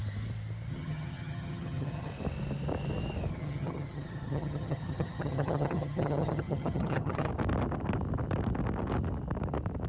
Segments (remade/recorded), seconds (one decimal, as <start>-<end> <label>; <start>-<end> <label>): 0.0-0.7 recorded; 0.7-2.1 remade; 2.1-3.3 recorded; 3.3-7.3 remade; 7.3-9.9 recorded